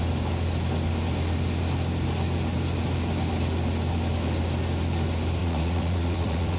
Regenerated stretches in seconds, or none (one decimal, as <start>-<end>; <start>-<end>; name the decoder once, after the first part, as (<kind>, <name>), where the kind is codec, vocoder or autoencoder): 5.4-6.6 (vocoder, Vocos)